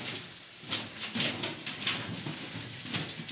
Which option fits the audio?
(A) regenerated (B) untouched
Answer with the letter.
B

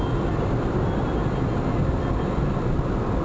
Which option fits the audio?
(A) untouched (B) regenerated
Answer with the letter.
A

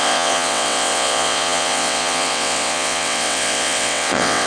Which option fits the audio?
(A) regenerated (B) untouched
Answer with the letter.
A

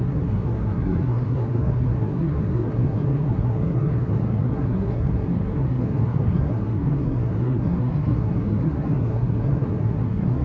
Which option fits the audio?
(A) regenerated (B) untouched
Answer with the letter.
A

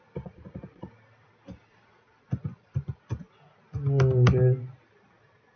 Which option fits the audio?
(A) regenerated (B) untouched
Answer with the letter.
B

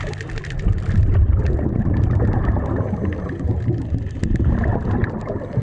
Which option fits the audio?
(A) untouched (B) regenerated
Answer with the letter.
A